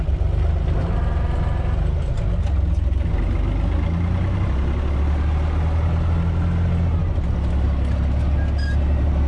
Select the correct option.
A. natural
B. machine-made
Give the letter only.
A